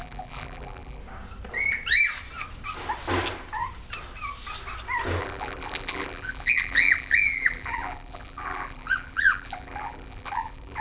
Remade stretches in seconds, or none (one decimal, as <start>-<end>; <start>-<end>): 0.0-1.0; 5.2-10.8